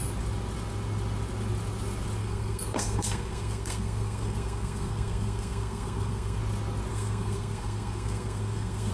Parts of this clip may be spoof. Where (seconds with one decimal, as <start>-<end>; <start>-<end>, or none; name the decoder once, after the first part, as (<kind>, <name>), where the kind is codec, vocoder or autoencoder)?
2.2-6.4 (codec, SNAC); 6.9-8.9